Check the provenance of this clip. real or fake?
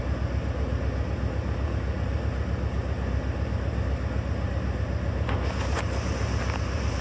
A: real